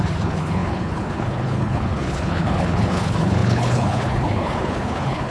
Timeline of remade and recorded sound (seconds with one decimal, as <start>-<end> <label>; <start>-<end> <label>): 0.0-5.3 remade